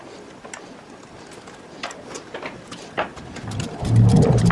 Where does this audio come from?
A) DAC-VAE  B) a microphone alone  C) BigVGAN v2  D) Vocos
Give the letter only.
B